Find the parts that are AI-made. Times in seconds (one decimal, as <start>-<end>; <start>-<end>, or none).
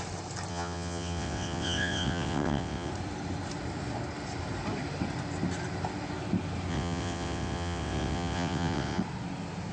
0.5-2.9; 6.7-9.0